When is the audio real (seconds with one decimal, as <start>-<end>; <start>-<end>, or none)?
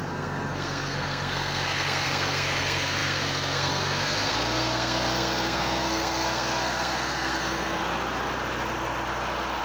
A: 7.8-9.6